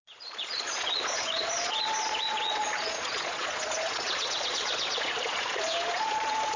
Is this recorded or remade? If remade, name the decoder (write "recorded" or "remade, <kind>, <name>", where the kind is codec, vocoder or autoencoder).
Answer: remade, vocoder, Vocos